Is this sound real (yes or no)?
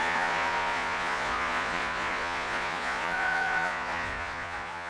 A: no